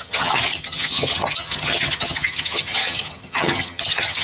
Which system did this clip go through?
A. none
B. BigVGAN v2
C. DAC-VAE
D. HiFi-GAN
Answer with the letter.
D